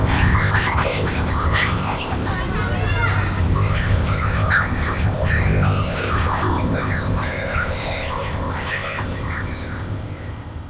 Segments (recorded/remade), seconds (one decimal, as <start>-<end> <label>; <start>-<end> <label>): 0.0-2.3 remade; 2.3-3.4 recorded; 3.4-10.7 remade